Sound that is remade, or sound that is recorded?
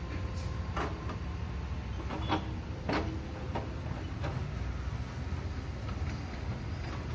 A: recorded